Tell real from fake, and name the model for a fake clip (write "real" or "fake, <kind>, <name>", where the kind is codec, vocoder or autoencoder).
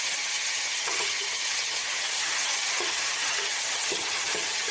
fake, vocoder, HiFi-GAN